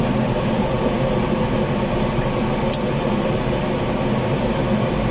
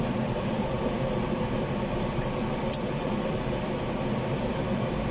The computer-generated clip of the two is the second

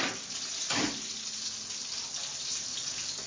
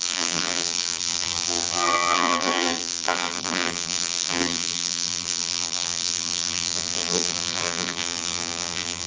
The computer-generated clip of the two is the second